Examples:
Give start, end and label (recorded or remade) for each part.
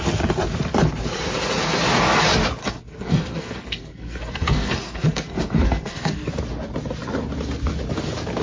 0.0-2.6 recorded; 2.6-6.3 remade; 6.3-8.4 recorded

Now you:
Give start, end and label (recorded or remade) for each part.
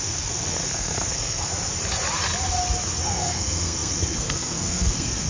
0.0-1.5 remade; 1.5-3.0 recorded; 3.0-5.3 remade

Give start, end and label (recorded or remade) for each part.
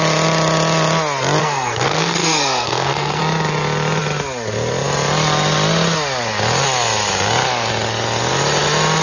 0.0-1.4 recorded; 1.4-3.2 remade; 3.2-9.0 recorded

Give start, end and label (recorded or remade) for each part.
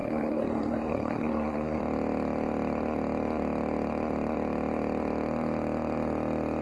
0.0-1.8 remade; 1.8-6.6 recorded